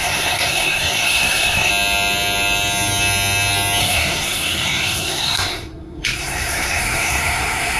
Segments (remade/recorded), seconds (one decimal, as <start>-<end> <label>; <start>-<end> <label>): 0.0-1.7 remade; 1.7-3.8 recorded; 3.8-7.8 remade

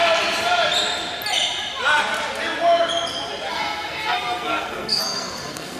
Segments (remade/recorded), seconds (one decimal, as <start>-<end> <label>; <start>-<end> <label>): 0.0-3.5 recorded; 3.5-5.8 remade